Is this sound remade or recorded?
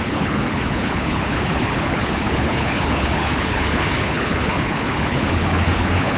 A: remade